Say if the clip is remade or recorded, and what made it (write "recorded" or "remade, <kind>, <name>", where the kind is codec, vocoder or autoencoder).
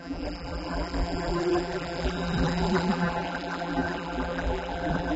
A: remade, vocoder, BigVGAN v2